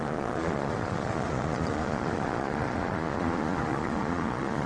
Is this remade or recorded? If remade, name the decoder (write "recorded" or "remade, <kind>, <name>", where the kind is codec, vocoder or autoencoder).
remade, vocoder, Vocos